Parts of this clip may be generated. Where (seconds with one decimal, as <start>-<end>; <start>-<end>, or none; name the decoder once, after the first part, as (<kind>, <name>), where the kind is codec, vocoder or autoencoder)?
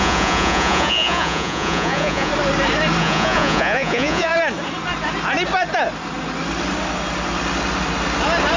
0.0-2.3 (vocoder, Vocos); 3.0-4.3